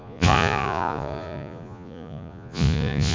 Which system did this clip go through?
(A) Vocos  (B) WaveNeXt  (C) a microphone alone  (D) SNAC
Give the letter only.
A